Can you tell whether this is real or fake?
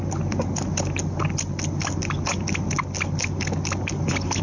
real